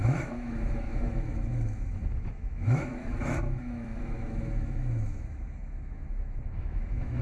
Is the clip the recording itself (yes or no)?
no